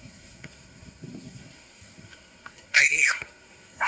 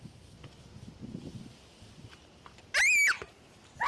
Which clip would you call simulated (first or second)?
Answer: first